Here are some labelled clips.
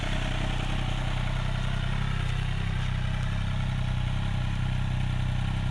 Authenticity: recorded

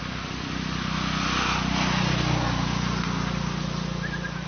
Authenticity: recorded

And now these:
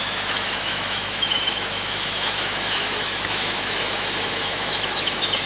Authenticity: remade